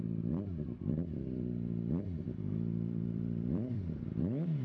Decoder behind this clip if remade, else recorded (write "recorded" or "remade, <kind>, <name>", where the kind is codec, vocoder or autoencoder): remade, vocoder, BigVGAN v2